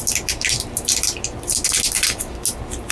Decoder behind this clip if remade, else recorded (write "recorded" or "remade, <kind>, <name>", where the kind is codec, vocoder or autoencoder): recorded